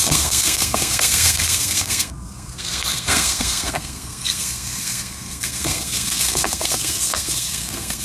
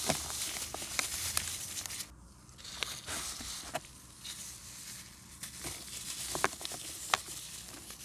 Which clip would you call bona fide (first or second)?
second